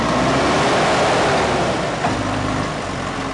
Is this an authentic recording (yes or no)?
yes